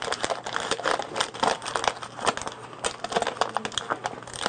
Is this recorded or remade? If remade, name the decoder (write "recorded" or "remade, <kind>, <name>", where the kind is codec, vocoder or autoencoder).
recorded